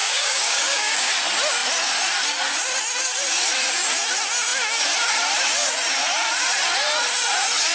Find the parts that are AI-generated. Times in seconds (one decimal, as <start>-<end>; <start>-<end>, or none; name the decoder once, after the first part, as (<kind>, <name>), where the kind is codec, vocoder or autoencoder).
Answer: 0.0-1.1 (codec, DAC)